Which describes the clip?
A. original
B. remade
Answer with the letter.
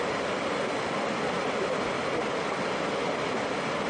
A